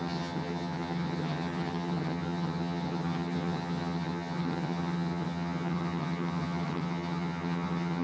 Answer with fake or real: fake